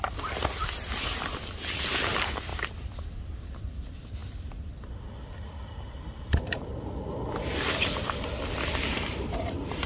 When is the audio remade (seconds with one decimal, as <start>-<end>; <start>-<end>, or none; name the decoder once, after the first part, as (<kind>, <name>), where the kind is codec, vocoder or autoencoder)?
8.9-9.9 (vocoder, BigVGAN v2)